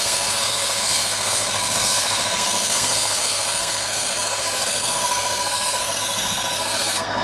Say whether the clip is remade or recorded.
remade